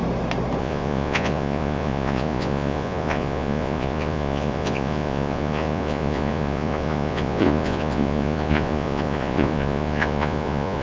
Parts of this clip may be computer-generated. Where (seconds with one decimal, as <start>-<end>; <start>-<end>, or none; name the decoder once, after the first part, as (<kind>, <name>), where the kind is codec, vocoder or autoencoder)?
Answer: 0.6-10.8 (vocoder, Vocos)